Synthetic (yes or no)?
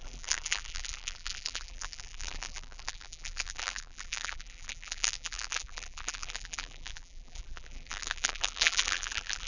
yes